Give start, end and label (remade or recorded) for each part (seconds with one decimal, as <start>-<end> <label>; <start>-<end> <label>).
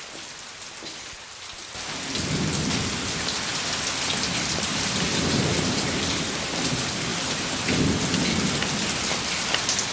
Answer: 0.0-4.7 recorded; 4.7-6.0 remade; 6.0-7.1 recorded; 7.1-7.8 remade; 7.8-9.9 recorded